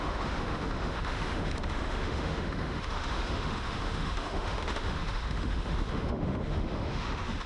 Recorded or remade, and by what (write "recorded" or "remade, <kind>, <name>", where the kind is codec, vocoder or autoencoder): remade, autoencoder, DAC-VAE